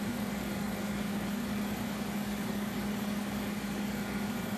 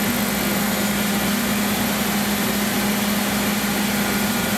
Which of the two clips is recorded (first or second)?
second